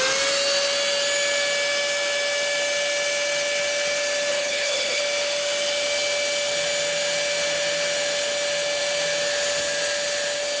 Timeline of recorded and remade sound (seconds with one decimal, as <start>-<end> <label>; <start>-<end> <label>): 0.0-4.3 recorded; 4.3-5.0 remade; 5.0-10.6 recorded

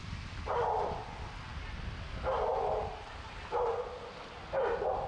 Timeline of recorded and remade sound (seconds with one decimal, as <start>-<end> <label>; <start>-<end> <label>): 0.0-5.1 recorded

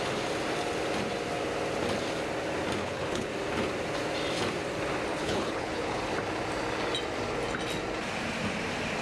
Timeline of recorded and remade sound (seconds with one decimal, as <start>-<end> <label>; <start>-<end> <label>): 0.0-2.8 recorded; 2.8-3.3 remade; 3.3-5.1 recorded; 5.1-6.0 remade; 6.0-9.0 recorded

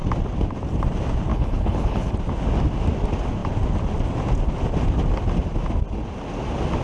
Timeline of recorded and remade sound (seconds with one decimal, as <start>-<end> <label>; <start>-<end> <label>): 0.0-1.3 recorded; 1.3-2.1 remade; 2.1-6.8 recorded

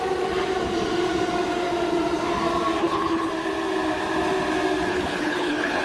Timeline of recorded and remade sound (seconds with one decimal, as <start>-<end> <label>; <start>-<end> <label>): 0.0-2.8 recorded; 2.8-3.3 remade; 3.3-4.9 recorded; 4.9-5.8 remade

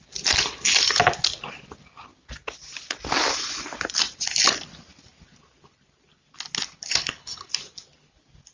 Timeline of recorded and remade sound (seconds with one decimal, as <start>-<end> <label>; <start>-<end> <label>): 0.0-6.9 recorded; 6.9-7.5 remade; 7.5-8.5 recorded